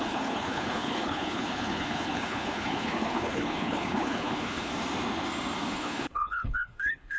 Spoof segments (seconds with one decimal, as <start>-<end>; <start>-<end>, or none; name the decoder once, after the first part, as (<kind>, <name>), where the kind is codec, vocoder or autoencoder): 0.0-4.7 (codec, HILCodec); 5.7-7.2